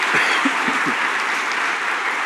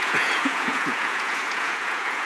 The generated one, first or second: second